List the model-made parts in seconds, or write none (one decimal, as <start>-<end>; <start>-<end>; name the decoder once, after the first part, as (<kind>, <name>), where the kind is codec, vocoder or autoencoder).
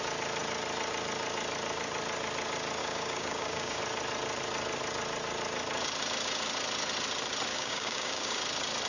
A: 2.8-3.8 (codec, DAC); 7.5-8.4